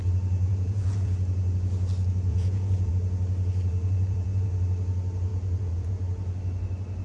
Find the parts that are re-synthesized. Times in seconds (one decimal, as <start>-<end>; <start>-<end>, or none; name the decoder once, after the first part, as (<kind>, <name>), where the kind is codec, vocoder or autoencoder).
0.5-1.1 (vocoder, Vocos); 2.3-2.9; 3.7-4.5; 5.3-5.9